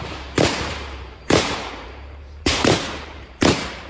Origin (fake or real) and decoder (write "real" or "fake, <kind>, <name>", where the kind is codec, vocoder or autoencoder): fake, vocoder, BigVGAN v2